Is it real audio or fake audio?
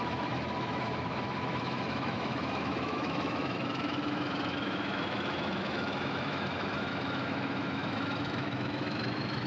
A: fake